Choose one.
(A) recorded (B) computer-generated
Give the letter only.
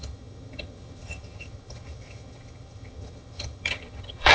B